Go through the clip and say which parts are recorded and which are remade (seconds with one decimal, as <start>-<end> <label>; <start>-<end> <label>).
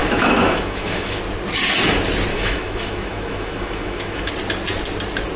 0.0-1.2 remade; 1.2-2.3 recorded; 2.3-4.3 remade; 4.3-5.4 recorded